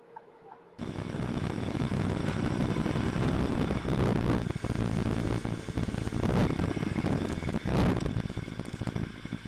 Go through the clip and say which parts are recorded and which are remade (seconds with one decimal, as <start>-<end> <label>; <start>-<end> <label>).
0.0-2.2 remade; 2.2-7.0 recorded; 7.0-7.7 remade; 7.7-8.3 recorded; 8.3-9.5 remade